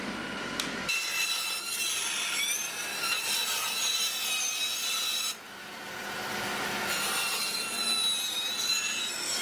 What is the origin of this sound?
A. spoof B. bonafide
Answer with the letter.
B